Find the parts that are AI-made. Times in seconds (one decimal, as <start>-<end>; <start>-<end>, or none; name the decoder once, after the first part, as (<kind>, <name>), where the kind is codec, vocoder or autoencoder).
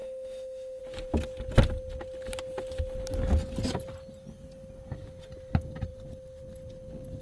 0.0-0.8 (autoencoder, DAC-VAE)